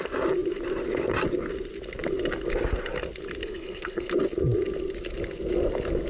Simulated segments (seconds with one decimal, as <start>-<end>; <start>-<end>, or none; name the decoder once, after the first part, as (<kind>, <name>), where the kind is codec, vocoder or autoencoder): 3.4-4.1 (codec, HILCodec)